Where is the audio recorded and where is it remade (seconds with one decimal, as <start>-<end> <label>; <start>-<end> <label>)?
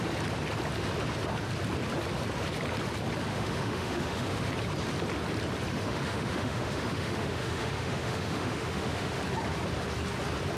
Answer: 0.0-3.3 recorded; 3.3-4.5 remade; 4.5-5.7 recorded; 5.7-9.2 remade; 9.2-10.6 recorded